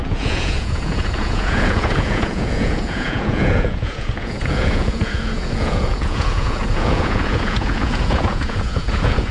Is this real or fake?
fake